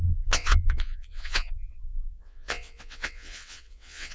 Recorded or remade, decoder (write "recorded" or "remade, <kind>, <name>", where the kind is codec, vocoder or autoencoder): remade, vocoder, WaveNeXt